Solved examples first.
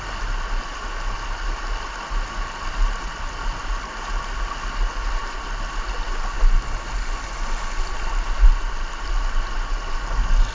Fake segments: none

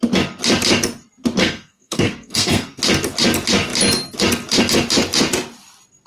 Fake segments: 1.4-2.8 (codec, SNAC)

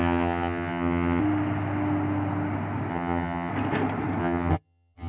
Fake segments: 0.0-1.2 (vocoder, HiFi-GAN); 2.9-3.5; 4.2-5.1